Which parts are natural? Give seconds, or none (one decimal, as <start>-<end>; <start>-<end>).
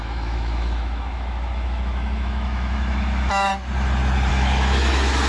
3.5-4.3